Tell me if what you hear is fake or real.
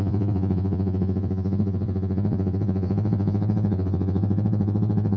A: fake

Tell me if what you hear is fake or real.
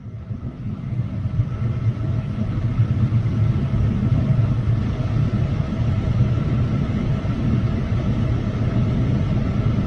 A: real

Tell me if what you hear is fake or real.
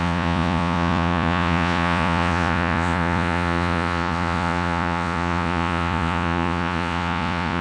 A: fake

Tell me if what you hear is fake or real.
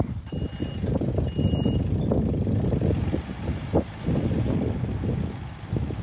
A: real